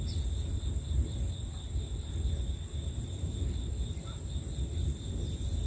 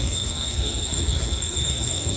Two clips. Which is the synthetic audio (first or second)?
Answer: second